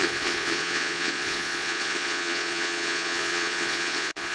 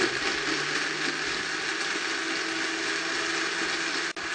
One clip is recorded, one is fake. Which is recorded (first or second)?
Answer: second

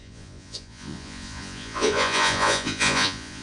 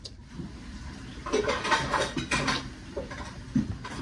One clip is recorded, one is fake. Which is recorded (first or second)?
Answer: second